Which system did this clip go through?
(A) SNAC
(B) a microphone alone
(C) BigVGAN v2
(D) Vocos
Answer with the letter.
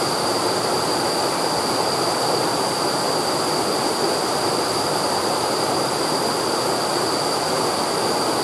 B